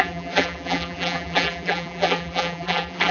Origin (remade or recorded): remade